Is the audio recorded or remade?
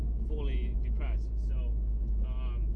recorded